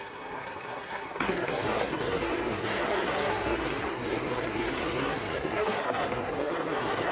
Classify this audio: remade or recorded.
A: remade